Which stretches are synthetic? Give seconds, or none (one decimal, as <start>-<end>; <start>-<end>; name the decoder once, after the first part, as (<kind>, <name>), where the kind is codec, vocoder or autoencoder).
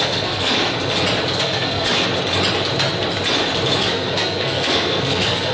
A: 0.0-0.6 (codec, SNAC); 1.4-1.9; 3.8-5.5